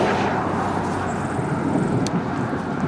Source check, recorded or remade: recorded